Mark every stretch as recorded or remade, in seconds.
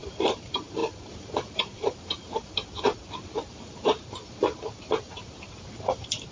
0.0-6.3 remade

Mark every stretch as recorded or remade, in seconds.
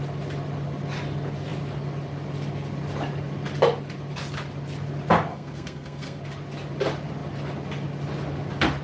0.0-5.3 recorded; 5.3-6.2 remade; 6.2-8.8 recorded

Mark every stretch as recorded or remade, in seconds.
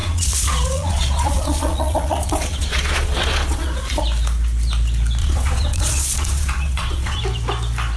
0.0-4.0 remade; 4.0-5.2 recorded; 5.2-7.2 remade; 7.2-8.0 recorded